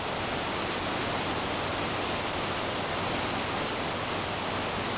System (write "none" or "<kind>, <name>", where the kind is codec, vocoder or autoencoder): none